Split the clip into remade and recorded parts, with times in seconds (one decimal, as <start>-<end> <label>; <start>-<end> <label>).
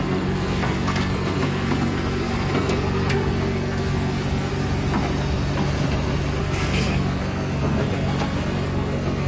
0.0-4.5 remade; 4.5-6.4 recorded; 6.4-9.3 remade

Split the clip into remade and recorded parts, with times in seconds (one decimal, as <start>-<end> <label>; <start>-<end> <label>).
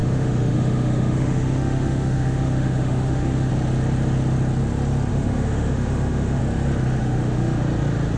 0.0-3.5 remade; 3.5-5.1 recorded; 5.1-6.4 remade; 6.4-7.0 recorded; 7.0-7.6 remade; 7.6-8.2 recorded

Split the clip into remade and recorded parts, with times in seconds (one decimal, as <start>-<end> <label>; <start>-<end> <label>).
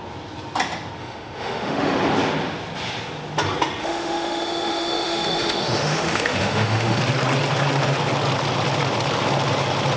0.0-1.0 recorded; 1.0-2.0 remade; 2.0-3.8 recorded; 3.8-7.0 remade; 7.0-10.0 recorded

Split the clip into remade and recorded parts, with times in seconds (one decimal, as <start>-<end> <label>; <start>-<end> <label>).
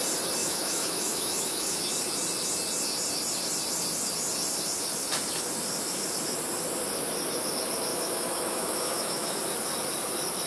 0.0-0.4 recorded; 0.4-1.8 remade; 1.8-7.9 recorded; 7.9-9.4 remade; 9.4-10.5 recorded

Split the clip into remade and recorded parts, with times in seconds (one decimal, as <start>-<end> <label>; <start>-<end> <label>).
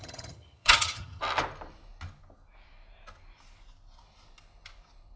0.0-1.2 remade; 1.2-5.2 recorded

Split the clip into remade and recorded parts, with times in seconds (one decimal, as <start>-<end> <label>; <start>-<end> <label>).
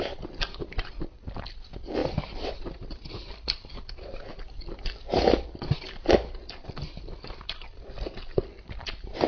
0.0-9.3 recorded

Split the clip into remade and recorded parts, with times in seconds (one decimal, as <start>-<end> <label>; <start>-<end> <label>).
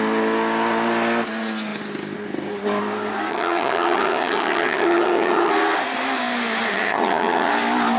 0.0-3.3 recorded; 3.3-5.5 remade; 5.5-6.7 recorded; 6.7-7.5 remade; 7.5-8.0 recorded